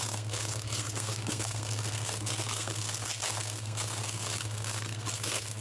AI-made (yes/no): yes